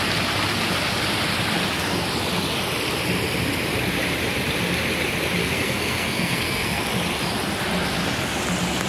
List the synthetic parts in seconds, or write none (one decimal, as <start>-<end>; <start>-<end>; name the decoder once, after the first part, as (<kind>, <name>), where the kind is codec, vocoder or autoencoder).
5.4-6.8 (codec, SNAC)